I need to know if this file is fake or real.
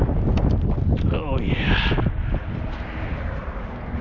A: real